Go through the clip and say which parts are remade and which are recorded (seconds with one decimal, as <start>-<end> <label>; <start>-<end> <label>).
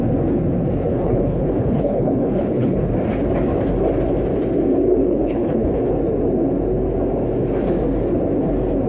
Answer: 0.0-0.9 recorded; 0.9-2.9 remade; 2.9-5.0 recorded; 5.0-5.9 remade; 5.9-8.9 recorded